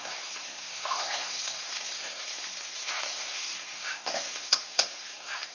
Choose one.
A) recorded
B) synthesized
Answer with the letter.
B